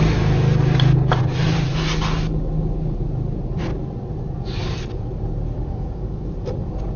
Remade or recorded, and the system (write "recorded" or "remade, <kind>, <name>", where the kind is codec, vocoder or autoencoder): recorded